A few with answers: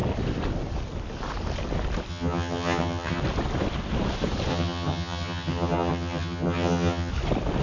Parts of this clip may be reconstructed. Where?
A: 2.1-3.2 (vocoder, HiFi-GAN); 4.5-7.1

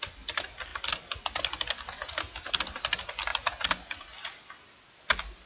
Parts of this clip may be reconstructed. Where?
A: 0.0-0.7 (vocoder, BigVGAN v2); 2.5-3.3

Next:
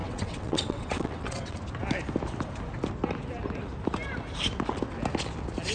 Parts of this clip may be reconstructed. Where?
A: 0.0-1.6 (vocoder, WaveNeXt)